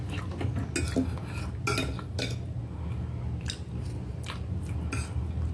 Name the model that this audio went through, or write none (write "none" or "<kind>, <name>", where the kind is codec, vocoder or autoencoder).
none